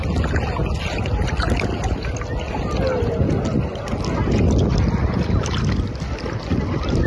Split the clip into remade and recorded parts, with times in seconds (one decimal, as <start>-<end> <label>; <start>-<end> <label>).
0.0-7.1 recorded